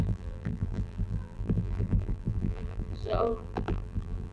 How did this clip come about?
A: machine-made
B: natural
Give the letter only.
A